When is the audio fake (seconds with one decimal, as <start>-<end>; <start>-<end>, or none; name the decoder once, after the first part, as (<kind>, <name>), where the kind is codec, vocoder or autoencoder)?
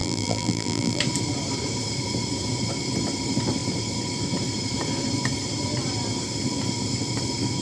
0.0-1.0 (vocoder, BigVGAN v2)